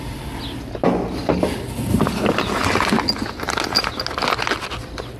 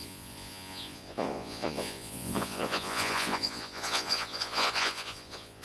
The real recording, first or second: first